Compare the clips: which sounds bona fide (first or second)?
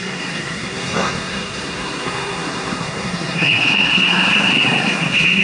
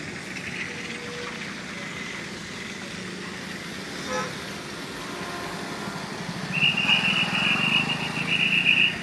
second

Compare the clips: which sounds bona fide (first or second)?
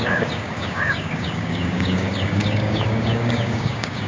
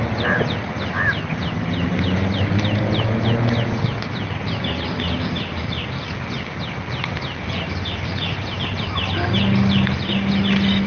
second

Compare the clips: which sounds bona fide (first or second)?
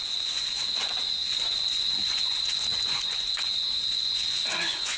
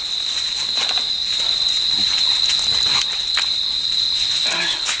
second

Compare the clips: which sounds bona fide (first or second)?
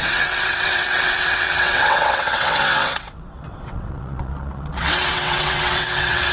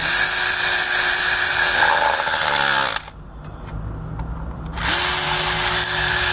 second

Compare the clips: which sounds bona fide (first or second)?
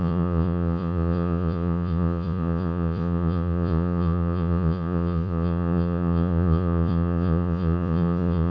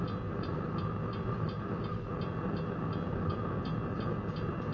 second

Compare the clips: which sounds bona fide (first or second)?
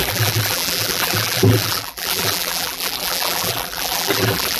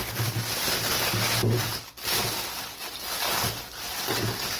second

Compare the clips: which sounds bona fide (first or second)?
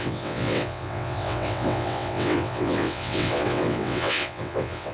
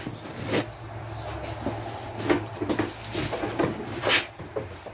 second